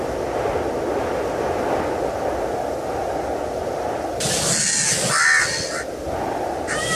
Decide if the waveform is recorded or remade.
recorded